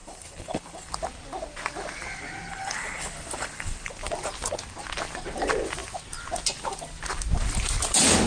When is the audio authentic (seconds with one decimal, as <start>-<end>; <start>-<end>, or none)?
0.9-2.5; 3.9-8.3